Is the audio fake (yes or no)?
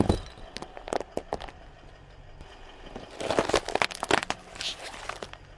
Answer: no